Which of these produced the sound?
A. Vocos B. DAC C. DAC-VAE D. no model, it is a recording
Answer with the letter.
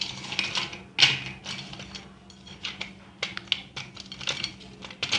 D